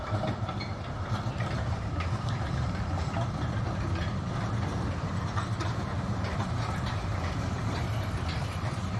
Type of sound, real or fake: real